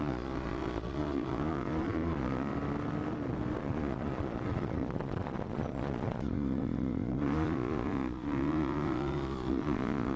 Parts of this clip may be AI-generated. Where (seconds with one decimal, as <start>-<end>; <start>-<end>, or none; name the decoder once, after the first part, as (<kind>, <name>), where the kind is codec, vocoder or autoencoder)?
0.0-2.5 (vocoder, Vocos); 3.6-10.2